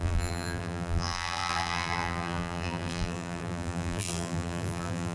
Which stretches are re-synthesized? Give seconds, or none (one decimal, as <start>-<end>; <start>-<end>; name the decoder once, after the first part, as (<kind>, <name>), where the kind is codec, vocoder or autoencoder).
0.0-5.1 (vocoder, BigVGAN v2)